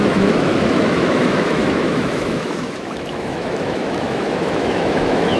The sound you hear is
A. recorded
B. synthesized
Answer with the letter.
B